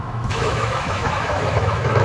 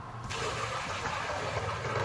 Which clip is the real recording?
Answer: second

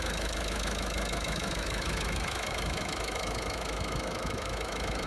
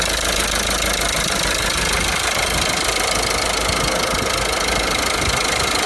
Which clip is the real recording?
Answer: second